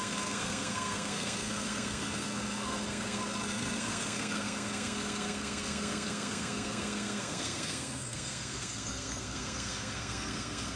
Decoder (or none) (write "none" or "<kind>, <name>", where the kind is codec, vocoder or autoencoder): codec, SNAC